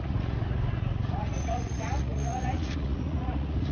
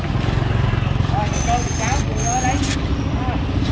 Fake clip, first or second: first